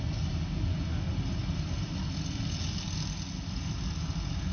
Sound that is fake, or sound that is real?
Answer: real